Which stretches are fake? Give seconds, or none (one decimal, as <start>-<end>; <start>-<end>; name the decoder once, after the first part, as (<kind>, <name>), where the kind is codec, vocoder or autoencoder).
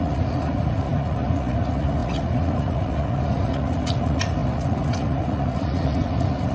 0.0-6.5 (vocoder, Vocos)